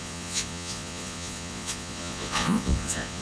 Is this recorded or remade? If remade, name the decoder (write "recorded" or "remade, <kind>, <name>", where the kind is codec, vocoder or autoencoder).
remade, vocoder, Vocos